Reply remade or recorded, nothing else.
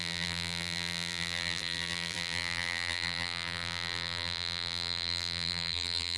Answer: remade